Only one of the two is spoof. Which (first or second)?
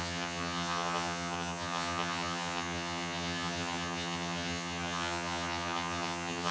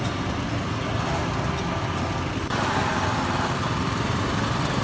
first